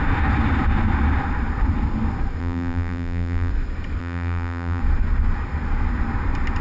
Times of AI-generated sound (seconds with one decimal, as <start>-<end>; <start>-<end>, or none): 2.4-3.5; 4.0-4.8